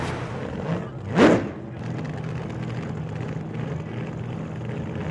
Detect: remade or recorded recorded